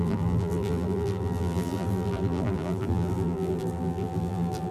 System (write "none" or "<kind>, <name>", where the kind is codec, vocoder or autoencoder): vocoder, BigVGAN v2